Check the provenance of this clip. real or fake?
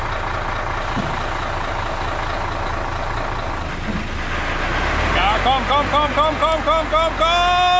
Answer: real